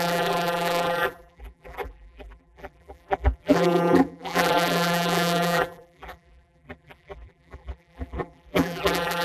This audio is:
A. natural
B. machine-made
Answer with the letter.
B